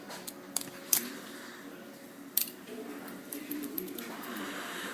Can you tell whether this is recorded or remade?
remade